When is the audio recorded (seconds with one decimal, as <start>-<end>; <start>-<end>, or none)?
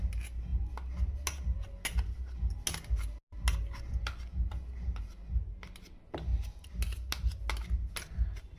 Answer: 0.0-8.6